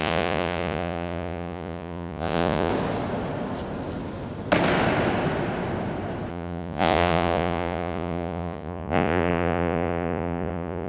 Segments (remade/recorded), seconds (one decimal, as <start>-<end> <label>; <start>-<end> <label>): 0.0-2.7 remade; 2.7-6.3 recorded; 6.3-10.9 remade